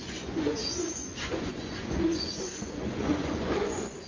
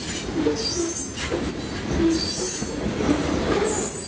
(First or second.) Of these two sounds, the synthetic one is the first